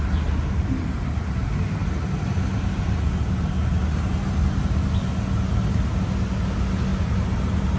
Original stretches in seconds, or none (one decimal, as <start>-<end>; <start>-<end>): 0.0-7.8